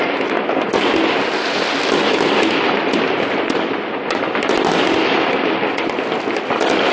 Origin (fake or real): real